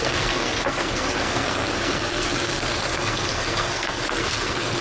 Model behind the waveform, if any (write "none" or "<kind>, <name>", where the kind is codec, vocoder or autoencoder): codec, SNAC